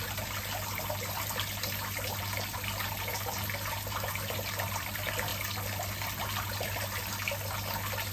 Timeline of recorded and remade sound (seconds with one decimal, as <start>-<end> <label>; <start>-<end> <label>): 0.0-8.1 recorded